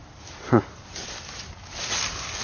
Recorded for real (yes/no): yes